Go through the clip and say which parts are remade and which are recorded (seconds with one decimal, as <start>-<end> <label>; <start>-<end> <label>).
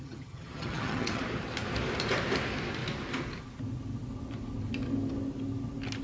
0.0-1.2 remade; 1.2-6.0 recorded